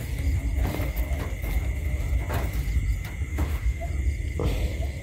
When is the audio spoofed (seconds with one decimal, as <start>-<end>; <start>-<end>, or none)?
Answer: 3.3-3.9